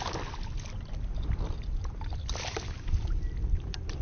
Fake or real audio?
real